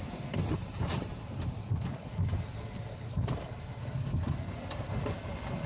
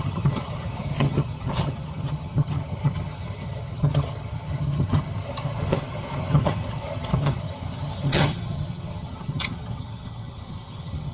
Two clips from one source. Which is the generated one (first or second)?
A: second